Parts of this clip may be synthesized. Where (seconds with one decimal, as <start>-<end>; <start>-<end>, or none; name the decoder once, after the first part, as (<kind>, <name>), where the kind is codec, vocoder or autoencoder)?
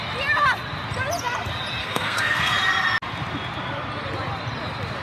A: 1.8-2.5 (codec, SNAC)